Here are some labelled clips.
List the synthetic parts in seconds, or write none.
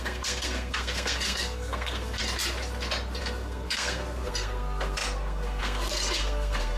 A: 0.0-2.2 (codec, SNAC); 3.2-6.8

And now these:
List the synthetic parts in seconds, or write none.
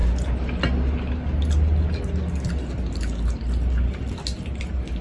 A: none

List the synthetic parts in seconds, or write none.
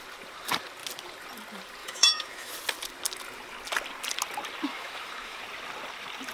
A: 1.8-2.5 (autoencoder, DAC-VAE); 4.7-5.4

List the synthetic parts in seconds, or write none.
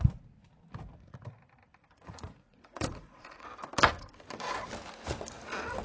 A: 1.8-3.5 (vocoder, Vocos)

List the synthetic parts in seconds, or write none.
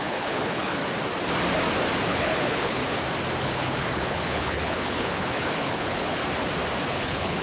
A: 0.0-0.8 (codec, HILCodec); 2.1-2.8; 3.4-6.2; 6.9-7.4